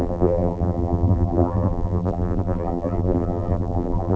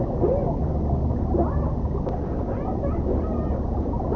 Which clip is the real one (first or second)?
second